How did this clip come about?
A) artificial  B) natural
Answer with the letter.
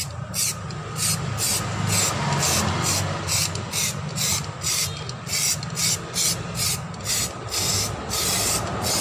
B